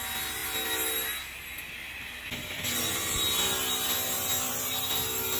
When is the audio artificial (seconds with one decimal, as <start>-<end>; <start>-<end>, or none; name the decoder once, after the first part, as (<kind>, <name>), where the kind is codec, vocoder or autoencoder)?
none